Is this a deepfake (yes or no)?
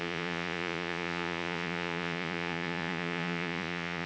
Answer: yes